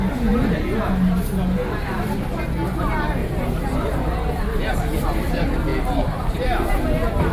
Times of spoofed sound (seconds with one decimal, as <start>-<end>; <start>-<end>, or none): 3.2-4.4; 5.7-7.3